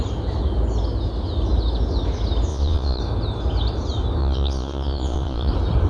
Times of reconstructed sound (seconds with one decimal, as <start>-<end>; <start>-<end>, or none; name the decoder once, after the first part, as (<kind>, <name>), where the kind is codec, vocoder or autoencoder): 2.5-3.0 (vocoder, Vocos); 4.2-5.5